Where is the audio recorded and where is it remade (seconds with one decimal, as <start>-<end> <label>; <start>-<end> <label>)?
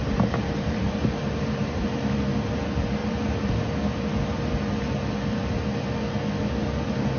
0.0-1.8 remade; 1.8-3.0 recorded; 3.0-3.5 remade; 3.5-7.2 recorded